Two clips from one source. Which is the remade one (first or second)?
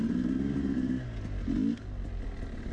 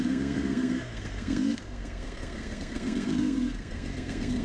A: second